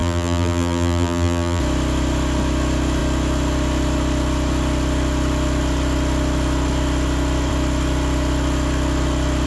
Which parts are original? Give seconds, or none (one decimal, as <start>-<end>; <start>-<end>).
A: 1.6-9.5